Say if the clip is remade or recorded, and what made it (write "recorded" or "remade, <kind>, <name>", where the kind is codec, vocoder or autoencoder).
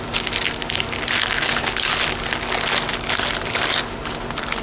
recorded